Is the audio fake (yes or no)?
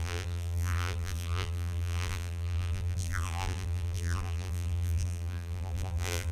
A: yes